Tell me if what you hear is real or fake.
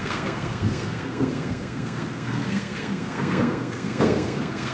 fake